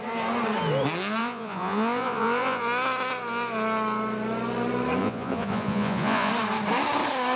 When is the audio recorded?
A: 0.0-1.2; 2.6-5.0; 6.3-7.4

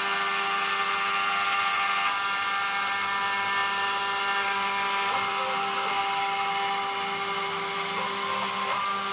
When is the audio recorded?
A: 0.0-9.1

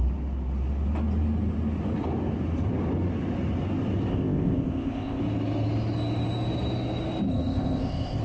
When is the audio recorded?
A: 0.0-4.1; 5.2-7.3

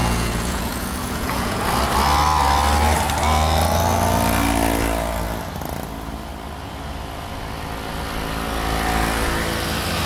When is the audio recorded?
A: 1.6-10.1

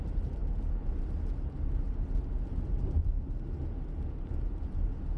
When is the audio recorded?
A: 0.0-5.2

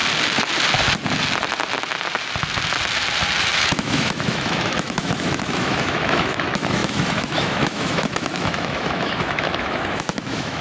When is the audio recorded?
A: 0.0-3.4

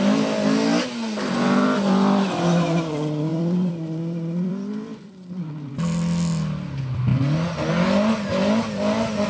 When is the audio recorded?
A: 0.0-3.3; 5.7-9.3